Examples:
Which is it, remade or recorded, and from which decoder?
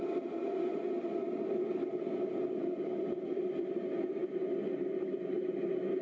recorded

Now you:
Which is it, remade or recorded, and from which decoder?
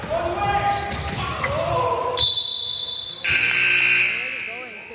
recorded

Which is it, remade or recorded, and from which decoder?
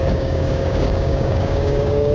remade, codec, DAC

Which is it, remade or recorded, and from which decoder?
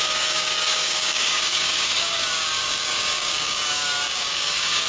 remade, codec, DAC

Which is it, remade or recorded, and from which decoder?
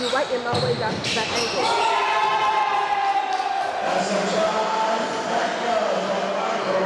recorded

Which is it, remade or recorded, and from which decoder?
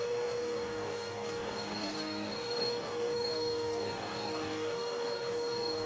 remade, codec, DAC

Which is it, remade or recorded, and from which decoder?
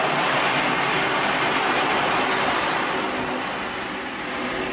recorded